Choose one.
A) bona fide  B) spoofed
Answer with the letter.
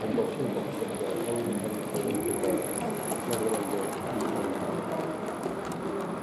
A